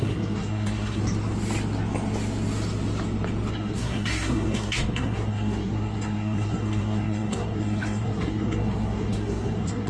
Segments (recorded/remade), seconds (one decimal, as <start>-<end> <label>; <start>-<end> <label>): 0.0-1.0 remade; 1.0-3.5 recorded; 3.5-9.9 remade